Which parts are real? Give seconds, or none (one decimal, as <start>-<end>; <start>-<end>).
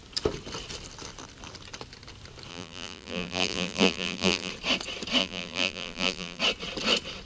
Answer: 0.0-2.5; 4.5-5.2; 6.4-7.3